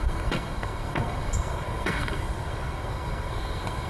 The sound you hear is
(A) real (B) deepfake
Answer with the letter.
B